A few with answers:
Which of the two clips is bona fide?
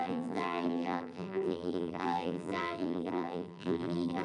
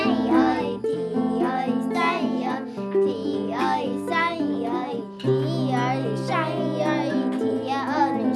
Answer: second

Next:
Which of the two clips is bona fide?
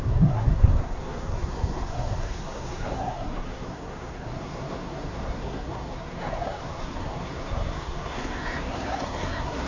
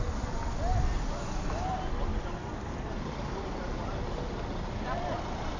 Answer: second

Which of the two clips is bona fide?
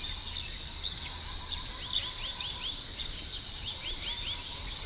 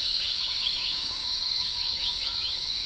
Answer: first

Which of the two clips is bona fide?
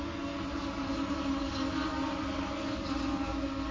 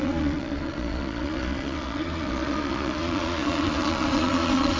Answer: first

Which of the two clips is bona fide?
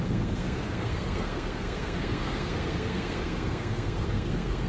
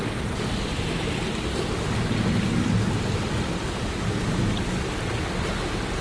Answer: second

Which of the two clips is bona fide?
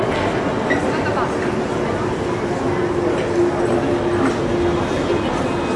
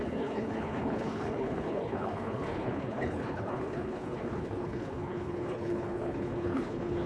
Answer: first